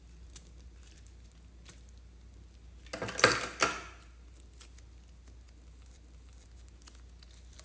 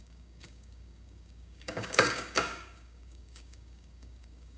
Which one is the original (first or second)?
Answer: first